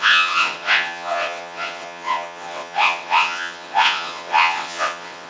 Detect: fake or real fake